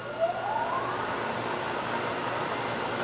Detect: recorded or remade recorded